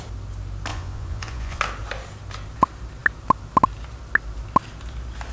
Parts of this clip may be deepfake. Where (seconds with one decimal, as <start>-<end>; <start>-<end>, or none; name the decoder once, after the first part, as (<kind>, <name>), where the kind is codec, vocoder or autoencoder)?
0.7-1.6 (vocoder, Vocos)